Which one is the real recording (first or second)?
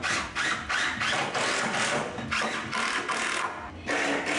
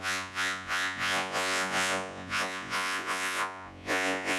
first